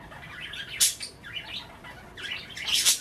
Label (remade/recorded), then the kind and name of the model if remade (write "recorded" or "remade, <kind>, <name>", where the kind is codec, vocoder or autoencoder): recorded